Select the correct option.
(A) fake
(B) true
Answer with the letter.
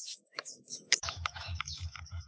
A